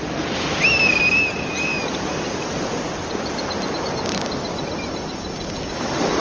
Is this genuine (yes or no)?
yes